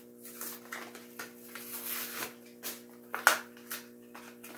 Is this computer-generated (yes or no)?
no